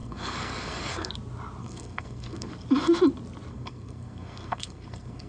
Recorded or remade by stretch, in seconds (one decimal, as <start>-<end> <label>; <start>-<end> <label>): 0.0-1.1 remade; 1.1-1.6 recorded; 1.6-2.5 remade; 2.5-3.5 recorded; 3.5-5.3 remade